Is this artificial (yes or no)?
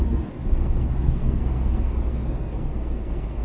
yes